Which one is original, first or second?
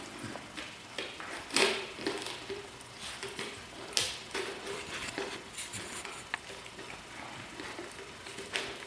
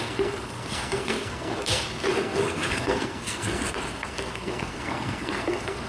first